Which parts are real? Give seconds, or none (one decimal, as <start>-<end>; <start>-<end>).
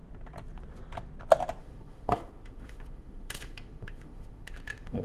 0.0-1.6